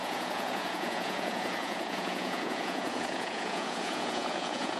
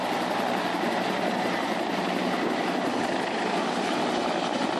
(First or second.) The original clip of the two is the second